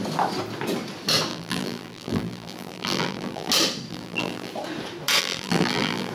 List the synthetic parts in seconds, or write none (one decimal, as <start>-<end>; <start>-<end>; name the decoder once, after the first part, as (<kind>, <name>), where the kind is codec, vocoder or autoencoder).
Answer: 1.3-3.5 (vocoder, BigVGAN v2); 3.9-4.5; 5.2-6.1